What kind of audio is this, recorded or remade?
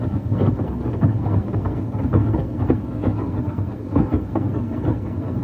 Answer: remade